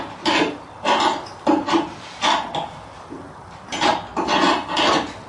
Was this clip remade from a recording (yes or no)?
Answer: no